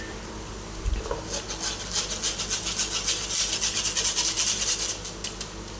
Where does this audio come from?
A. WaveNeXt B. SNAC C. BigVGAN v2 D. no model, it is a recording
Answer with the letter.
D